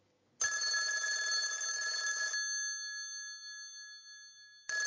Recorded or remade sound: recorded